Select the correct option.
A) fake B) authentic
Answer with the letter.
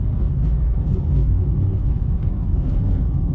A